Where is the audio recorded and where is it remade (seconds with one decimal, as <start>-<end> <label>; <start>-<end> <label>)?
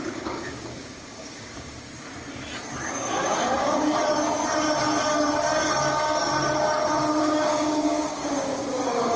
0.0-1.9 remade; 1.9-2.9 recorded; 2.9-3.9 remade; 3.9-5.8 recorded; 5.8-6.3 remade; 6.3-7.2 recorded; 7.2-9.2 remade